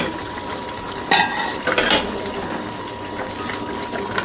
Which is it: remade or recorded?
recorded